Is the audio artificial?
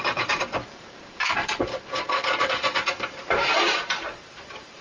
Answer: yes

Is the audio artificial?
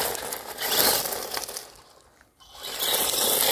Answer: no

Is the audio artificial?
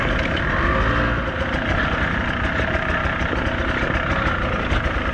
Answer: no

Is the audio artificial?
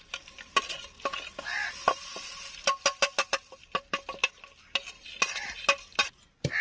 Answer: no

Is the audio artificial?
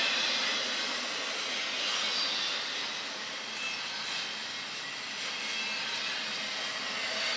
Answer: no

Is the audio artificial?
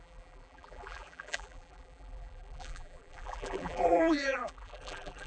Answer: yes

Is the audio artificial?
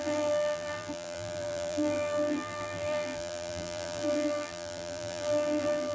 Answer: yes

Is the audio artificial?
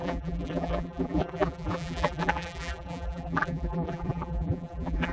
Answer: yes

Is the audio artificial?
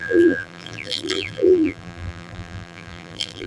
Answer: yes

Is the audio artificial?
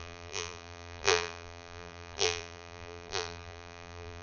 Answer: yes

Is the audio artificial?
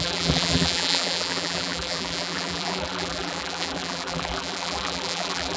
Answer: yes